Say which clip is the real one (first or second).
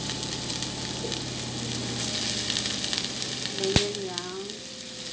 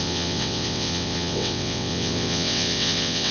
first